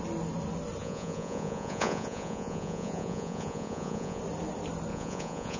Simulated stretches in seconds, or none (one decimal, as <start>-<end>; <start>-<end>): 0.8-4.2; 4.9-5.6